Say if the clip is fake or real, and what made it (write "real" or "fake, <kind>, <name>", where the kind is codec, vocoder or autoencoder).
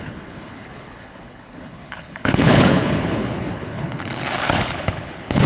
fake, codec, HILCodec